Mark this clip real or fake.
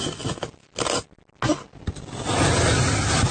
real